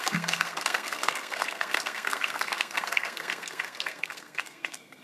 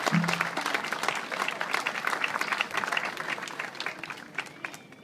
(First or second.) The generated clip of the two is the first